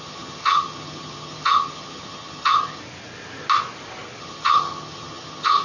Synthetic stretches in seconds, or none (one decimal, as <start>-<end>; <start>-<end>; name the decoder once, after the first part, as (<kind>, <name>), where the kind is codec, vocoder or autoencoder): 0.0-2.8 (vocoder, HiFi-GAN); 4.2-5.6